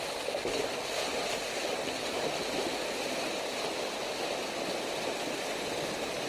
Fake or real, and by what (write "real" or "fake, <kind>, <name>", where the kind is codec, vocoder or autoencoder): real